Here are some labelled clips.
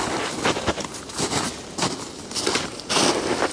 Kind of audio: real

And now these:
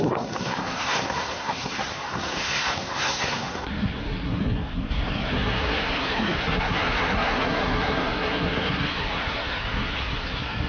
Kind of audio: fake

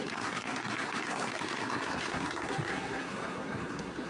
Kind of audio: fake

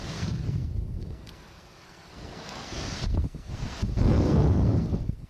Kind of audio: fake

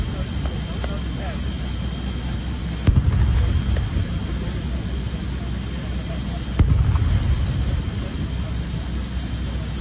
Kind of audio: real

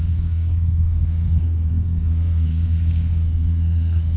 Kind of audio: fake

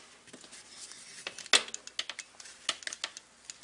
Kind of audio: real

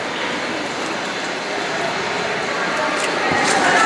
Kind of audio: real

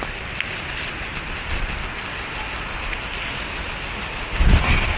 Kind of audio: real